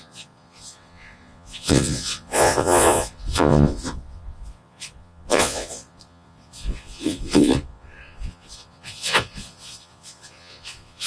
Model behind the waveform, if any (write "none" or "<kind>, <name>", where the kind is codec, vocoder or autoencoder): vocoder, Vocos